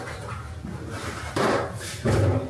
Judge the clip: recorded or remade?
recorded